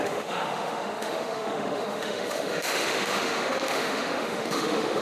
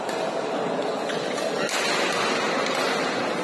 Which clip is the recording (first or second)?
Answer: second